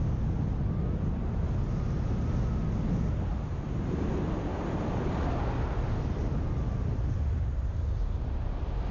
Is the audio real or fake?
real